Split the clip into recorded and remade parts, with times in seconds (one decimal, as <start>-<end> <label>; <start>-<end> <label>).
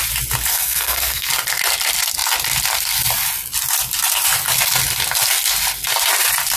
0.0-0.5 recorded; 0.5-1.3 remade; 1.3-6.6 recorded